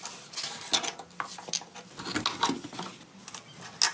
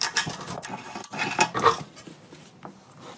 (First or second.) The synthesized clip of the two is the second